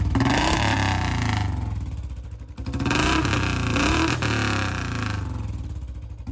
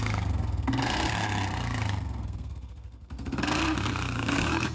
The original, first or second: first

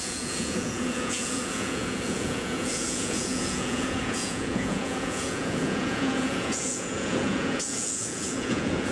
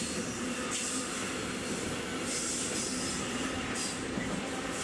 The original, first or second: second